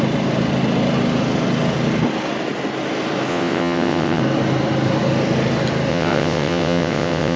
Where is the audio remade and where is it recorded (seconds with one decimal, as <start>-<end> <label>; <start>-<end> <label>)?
0.0-3.3 recorded; 3.3-4.2 remade; 4.2-5.9 recorded; 5.9-7.4 remade